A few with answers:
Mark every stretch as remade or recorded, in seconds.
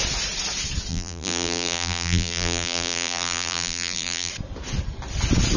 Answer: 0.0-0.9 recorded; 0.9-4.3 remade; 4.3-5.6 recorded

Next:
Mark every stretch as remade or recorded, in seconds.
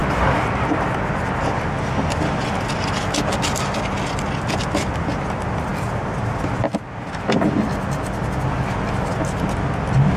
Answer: 0.0-10.2 recorded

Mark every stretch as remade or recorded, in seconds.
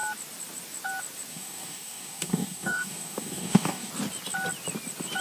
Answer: 0.0-1.3 recorded; 1.3-3.9 remade; 3.9-5.2 recorded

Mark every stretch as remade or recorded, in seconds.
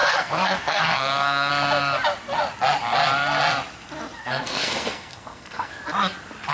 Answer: 0.0-1.5 remade; 1.5-4.2 recorded; 4.2-5.7 remade; 5.7-6.5 recorded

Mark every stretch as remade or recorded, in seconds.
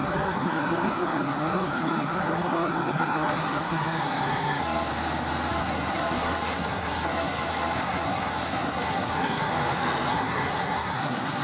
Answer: 0.0-4.9 remade; 4.9-5.5 recorded; 5.5-9.5 remade; 9.5-10.1 recorded; 10.1-11.4 remade